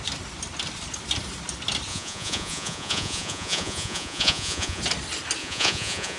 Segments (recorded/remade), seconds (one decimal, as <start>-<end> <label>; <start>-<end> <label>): 0.0-1.9 recorded; 1.9-4.8 remade; 4.8-5.4 recorded; 5.4-6.2 remade